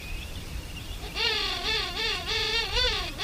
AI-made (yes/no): yes